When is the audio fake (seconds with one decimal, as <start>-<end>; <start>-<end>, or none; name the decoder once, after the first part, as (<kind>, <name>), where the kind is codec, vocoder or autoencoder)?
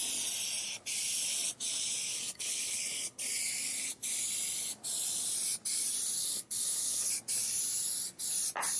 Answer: 2.1-3.4 (codec, HILCodec); 6.2-7.1